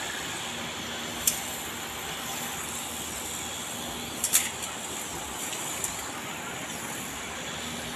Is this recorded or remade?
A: recorded